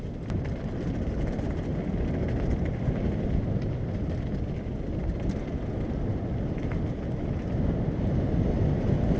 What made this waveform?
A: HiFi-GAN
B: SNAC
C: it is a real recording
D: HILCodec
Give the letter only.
C